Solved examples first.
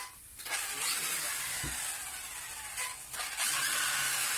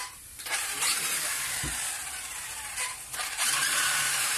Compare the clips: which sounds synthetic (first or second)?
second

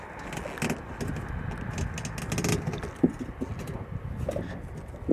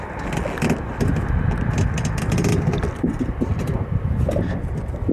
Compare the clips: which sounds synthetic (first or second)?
second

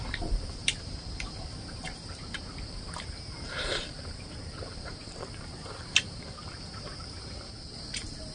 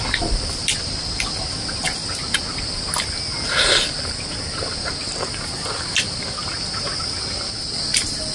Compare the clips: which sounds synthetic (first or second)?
first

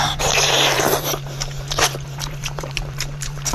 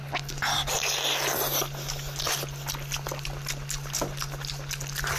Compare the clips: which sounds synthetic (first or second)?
first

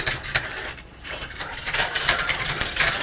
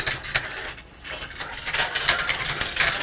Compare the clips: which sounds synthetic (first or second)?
first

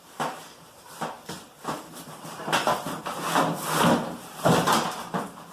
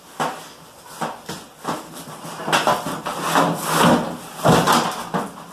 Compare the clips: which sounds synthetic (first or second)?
first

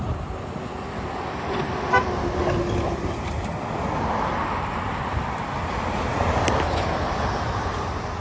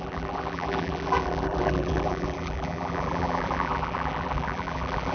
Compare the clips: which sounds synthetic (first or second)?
second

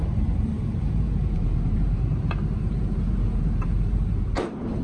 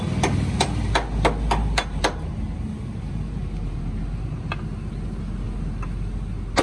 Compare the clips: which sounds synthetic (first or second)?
first